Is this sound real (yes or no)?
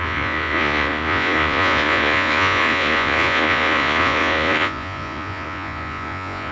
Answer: no